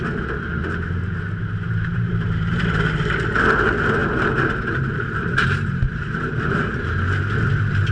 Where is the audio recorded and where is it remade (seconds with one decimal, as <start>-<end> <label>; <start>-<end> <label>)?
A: 0.0-0.6 recorded; 0.6-2.9 remade; 2.9-4.0 recorded; 4.0-7.2 remade; 7.2-7.9 recorded